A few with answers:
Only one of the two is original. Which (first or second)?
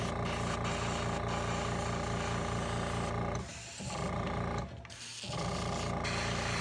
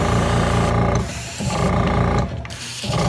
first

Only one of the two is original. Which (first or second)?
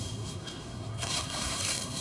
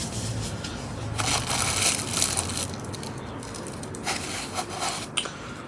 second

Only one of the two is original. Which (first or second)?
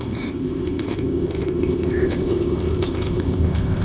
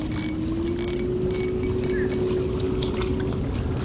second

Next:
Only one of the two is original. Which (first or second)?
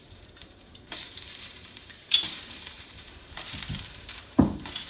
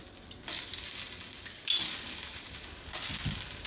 second